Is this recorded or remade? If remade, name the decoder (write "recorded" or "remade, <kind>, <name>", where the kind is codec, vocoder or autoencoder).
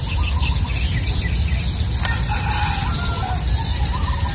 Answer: recorded